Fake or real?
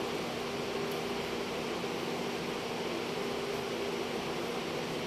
real